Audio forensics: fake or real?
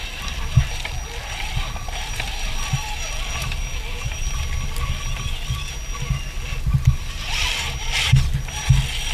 real